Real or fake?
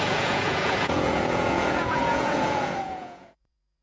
fake